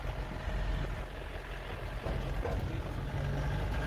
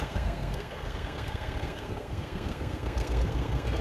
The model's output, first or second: second